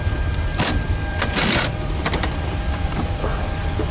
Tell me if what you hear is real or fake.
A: fake